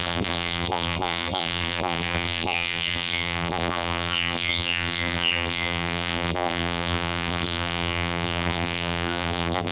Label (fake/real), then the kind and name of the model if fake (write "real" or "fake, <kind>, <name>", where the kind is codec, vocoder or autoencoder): fake, vocoder, BigVGAN v2